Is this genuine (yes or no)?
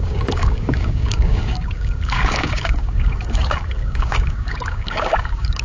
no